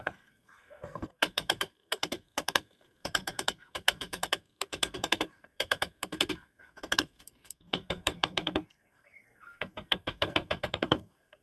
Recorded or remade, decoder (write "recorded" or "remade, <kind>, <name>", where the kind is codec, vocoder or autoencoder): remade, codec, SNAC